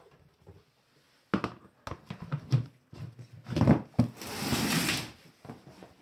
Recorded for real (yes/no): yes